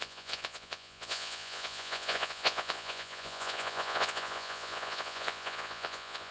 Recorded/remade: remade